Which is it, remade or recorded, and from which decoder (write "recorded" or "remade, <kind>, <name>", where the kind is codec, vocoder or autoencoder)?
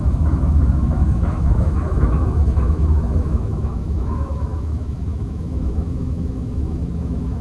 remade, autoencoder, DAC-VAE